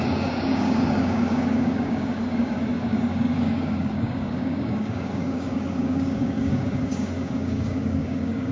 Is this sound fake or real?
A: fake